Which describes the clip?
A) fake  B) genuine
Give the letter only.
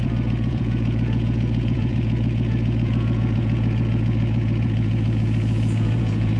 A